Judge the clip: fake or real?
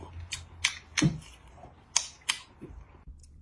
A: real